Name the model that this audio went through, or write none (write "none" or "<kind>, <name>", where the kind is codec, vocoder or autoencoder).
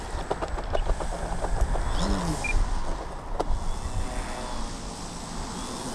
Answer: none